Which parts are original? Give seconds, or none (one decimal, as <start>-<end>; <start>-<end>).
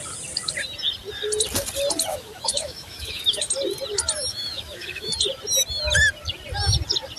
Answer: 0.0-2.1; 3.5-4.3; 5.1-7.2